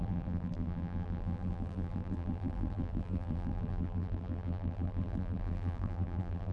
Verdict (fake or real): fake